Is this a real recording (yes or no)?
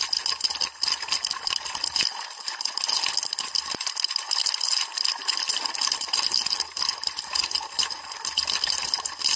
yes